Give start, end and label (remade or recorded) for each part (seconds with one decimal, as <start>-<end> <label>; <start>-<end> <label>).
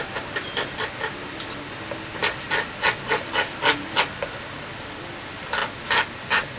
0.0-6.6 recorded